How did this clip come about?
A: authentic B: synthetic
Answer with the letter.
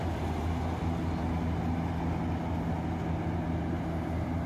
A